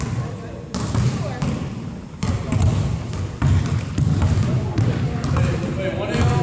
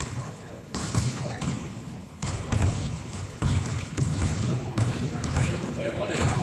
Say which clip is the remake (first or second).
second